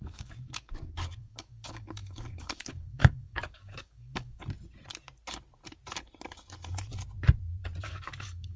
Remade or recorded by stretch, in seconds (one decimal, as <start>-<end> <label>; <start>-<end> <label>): 0.0-4.4 remade; 4.4-7.8 recorded; 7.8-8.6 remade